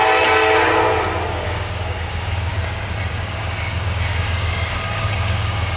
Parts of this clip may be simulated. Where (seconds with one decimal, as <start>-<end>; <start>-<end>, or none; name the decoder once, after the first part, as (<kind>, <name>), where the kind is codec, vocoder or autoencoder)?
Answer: 1.3-2.5 (codec, DAC); 3.1-5.8